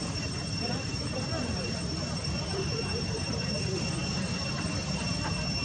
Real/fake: fake